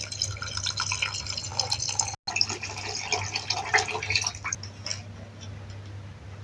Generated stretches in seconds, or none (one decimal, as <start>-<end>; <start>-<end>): none